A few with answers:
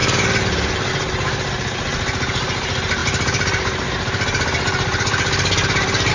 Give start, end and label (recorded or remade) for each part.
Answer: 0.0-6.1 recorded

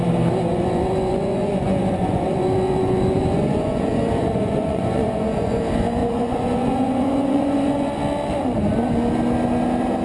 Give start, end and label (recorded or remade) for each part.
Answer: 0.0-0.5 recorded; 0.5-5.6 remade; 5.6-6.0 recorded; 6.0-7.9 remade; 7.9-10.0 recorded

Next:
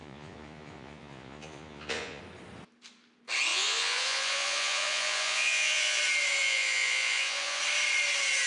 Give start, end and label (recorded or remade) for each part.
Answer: 0.0-2.2 remade; 2.2-3.5 recorded; 3.5-6.0 remade; 6.0-6.4 recorded; 6.4-7.6 remade; 7.6-8.5 recorded

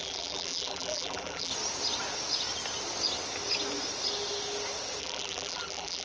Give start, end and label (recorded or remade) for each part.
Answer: 0.0-1.5 remade; 1.5-5.0 recorded; 5.0-6.0 remade

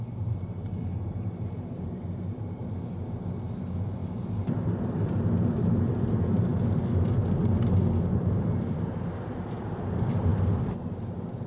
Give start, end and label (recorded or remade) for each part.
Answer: 0.0-2.6 remade; 2.6-3.4 recorded; 3.4-6.5 remade; 6.5-8.1 recorded; 8.1-11.5 remade

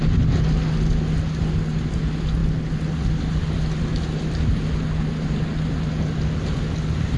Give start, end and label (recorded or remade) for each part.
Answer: 0.0-7.2 recorded

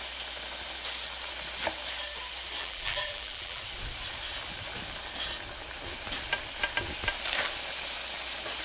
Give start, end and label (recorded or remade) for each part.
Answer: 0.0-2.6 recorded; 2.6-3.6 remade; 3.6-8.6 recorded